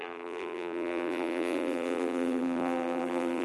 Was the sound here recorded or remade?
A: remade